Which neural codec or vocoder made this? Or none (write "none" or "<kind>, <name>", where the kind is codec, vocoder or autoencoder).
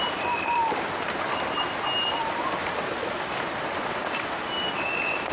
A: vocoder, BigVGAN v2